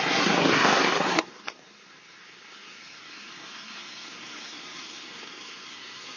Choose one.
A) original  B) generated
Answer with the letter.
B